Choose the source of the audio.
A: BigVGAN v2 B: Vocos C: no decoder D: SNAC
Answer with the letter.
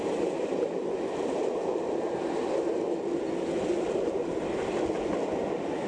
C